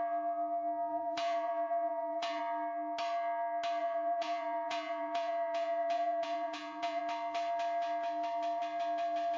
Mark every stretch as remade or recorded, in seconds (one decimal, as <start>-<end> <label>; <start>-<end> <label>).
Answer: 0.0-0.9 recorded; 0.9-2.4 remade; 2.4-3.8 recorded; 3.8-7.0 remade; 7.0-9.4 recorded